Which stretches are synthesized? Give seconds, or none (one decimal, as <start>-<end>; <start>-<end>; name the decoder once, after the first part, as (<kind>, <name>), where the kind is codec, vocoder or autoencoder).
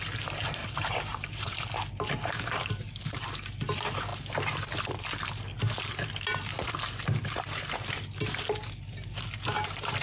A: 0.6-1.6 (vocoder, BigVGAN v2)